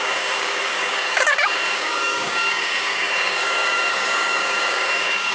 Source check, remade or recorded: remade